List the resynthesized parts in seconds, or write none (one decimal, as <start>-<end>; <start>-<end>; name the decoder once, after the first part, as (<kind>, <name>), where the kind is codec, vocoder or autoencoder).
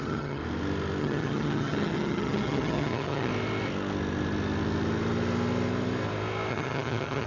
0.0-0.4 (vocoder, HiFi-GAN); 1.0-3.3; 6.5-7.3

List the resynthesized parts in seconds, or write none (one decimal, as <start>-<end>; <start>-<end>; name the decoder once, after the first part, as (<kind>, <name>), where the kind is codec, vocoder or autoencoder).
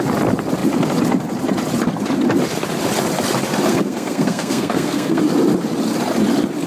3.7-5.2 (codec, SNAC)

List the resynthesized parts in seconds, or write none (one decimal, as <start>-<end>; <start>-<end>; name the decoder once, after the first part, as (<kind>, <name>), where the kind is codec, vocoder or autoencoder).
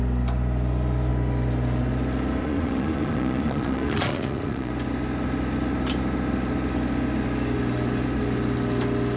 2.4-4.7 (vocoder, Vocos)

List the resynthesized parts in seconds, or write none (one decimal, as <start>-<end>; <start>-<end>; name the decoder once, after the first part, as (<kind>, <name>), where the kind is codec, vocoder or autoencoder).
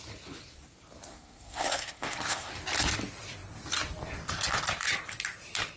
1.1-2.5 (codec, SNAC)